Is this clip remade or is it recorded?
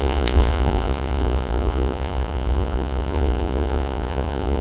remade